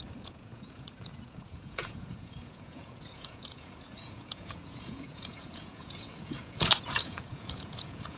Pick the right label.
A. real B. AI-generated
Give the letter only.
B